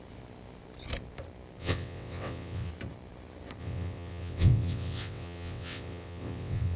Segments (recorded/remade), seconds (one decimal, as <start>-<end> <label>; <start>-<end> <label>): 0.0-1.6 recorded; 1.6-2.7 remade; 2.7-3.6 recorded; 3.6-6.8 remade